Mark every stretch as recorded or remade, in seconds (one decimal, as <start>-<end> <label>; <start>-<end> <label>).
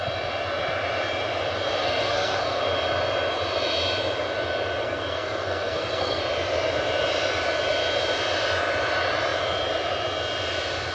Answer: 0.0-1.8 recorded; 1.8-2.6 remade; 2.6-4.8 recorded; 4.8-6.2 remade; 6.2-10.9 recorded